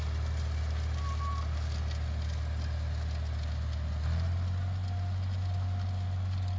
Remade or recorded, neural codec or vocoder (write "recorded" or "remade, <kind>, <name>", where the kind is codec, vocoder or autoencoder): recorded